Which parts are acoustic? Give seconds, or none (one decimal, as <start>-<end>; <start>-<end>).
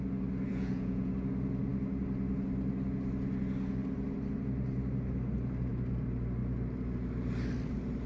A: 0.0-0.5; 1.1-8.1